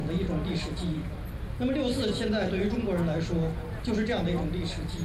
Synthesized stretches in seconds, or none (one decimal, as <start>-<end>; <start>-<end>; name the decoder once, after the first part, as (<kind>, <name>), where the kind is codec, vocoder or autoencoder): none